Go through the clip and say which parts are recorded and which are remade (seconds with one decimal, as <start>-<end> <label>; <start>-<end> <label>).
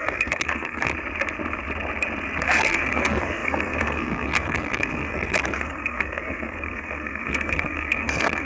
0.0-0.9 remade; 0.9-2.4 recorded; 2.4-8.5 remade